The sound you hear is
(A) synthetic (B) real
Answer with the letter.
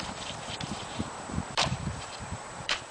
A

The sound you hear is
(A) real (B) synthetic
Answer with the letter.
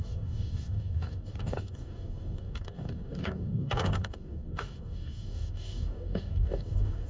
B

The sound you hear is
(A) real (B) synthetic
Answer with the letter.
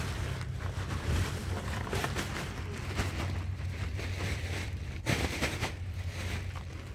B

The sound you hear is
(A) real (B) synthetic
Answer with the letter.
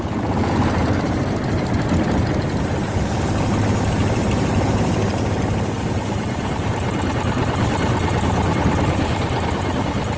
A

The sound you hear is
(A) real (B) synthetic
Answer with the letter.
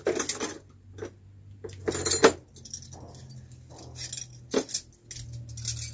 A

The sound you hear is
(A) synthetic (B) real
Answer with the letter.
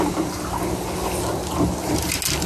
B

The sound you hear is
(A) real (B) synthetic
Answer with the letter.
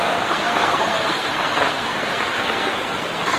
B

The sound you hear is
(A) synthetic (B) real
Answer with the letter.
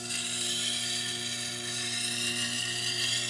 B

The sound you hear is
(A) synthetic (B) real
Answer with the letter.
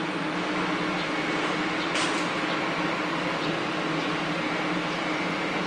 B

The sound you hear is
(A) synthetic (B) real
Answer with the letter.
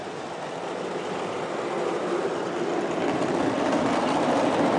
B